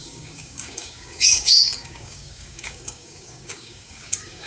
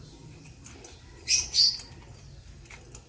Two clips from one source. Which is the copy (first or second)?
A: first